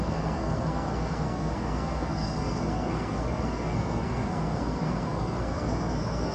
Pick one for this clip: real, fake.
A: fake